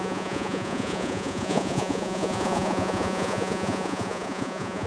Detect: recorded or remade remade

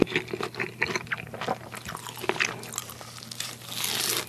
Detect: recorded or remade recorded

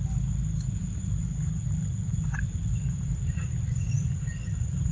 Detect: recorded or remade recorded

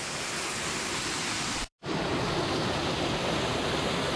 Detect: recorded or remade recorded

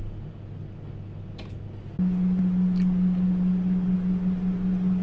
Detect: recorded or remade recorded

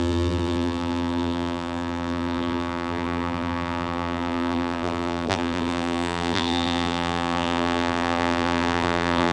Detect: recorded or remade remade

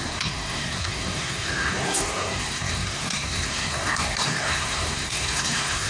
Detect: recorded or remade remade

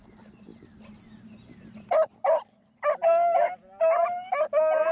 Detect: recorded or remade recorded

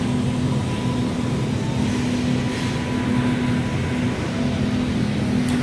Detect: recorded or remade recorded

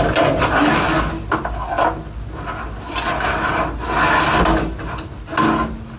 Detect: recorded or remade recorded